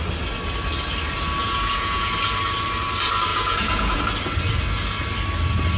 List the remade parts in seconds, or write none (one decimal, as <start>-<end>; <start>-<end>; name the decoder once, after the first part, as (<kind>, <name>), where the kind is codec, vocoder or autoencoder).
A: 1.4-2.1 (vocoder, Vocos); 3.3-4.0